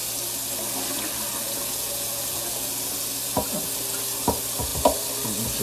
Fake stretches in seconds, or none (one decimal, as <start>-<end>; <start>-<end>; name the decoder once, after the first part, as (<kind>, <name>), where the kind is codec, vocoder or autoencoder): 1.4-2.7 (vocoder, Vocos)